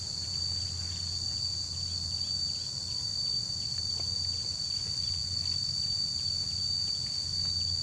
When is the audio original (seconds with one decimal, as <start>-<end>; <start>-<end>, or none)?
0.0-7.8